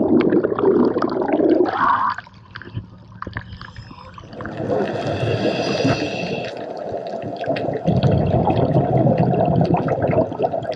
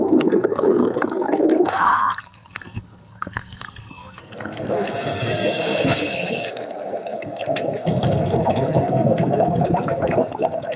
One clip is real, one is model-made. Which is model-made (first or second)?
second